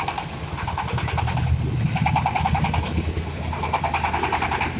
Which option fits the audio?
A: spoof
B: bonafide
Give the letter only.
B